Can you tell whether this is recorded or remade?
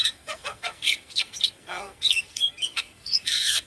remade